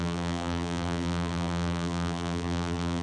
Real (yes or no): no